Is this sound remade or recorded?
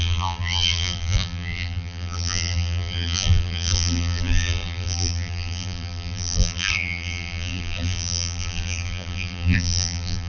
remade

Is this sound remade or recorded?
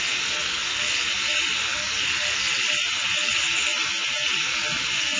recorded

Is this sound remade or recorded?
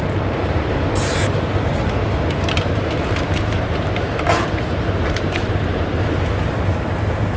remade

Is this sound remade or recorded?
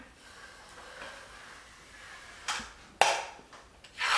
recorded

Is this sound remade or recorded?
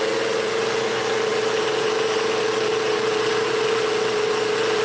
recorded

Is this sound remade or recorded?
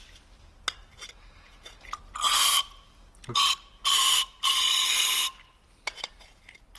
recorded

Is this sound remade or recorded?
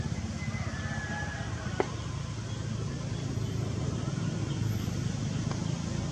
recorded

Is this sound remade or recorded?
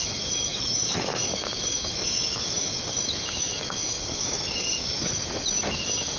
remade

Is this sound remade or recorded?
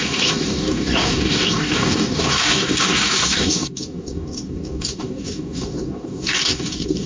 remade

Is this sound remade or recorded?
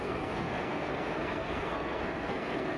remade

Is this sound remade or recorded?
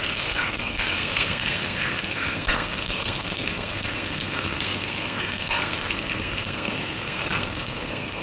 remade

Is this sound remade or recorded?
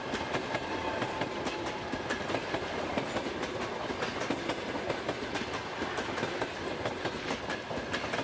recorded